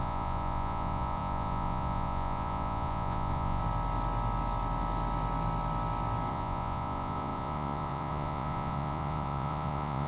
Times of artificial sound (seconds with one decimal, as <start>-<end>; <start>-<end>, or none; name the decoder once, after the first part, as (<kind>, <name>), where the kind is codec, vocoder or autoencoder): 0.0-3.6 (vocoder, Vocos); 6.3-10.1